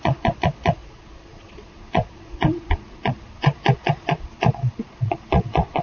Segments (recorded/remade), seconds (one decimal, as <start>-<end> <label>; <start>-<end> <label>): 0.0-5.8 remade